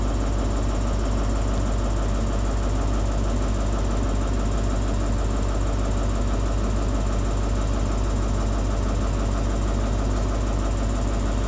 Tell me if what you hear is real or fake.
real